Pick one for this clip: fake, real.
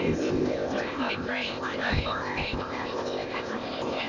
fake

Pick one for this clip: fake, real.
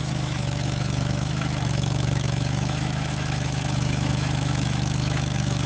fake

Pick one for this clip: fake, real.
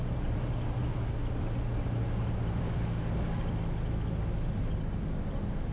real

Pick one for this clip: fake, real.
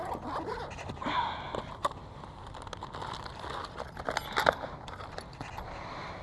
real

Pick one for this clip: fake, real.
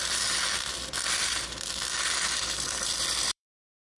fake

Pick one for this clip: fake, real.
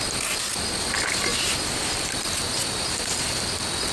real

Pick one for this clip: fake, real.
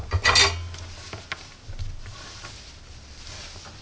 real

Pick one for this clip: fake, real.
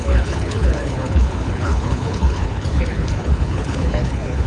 fake